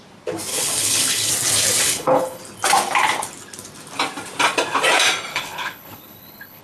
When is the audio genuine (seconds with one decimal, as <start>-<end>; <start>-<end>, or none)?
0.0-0.5; 1.3-1.8; 2.4-5.3